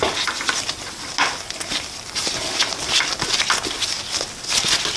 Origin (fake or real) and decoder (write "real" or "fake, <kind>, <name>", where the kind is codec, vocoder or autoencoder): real